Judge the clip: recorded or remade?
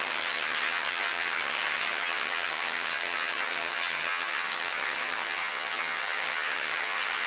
remade